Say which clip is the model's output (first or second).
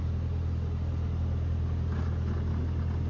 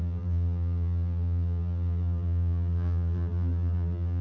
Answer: second